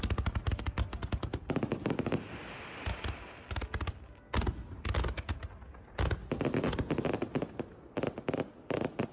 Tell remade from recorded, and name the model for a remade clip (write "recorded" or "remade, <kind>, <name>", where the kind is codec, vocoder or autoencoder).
recorded